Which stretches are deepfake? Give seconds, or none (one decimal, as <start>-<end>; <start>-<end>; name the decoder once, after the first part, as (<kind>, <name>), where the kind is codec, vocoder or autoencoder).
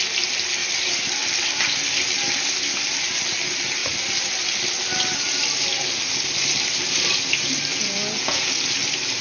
7.7-8.5 (vocoder, Vocos)